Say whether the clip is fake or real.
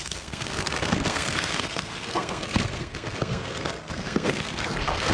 fake